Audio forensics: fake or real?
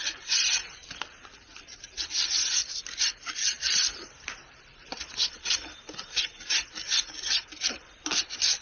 fake